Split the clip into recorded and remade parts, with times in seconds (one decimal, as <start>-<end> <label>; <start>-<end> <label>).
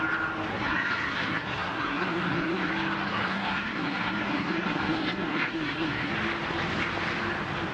0.0-0.5 recorded; 0.5-2.7 remade; 2.7-3.1 recorded; 3.1-6.1 remade; 6.1-7.7 recorded